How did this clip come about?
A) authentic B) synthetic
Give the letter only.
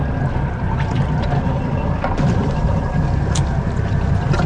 A